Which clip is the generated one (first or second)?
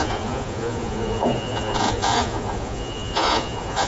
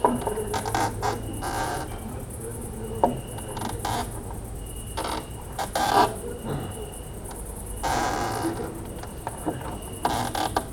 first